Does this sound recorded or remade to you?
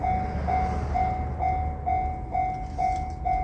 recorded